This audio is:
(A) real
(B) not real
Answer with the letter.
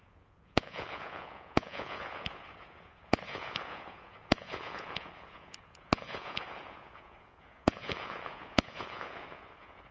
B